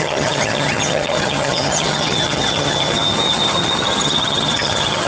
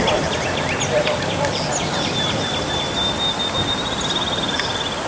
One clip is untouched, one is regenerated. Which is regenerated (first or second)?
first